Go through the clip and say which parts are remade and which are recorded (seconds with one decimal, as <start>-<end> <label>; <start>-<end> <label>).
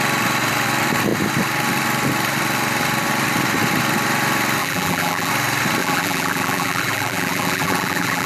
0.0-4.6 recorded; 4.6-5.3 remade; 5.3-5.8 recorded; 5.8-8.3 remade